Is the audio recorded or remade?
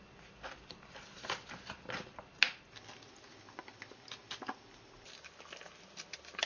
recorded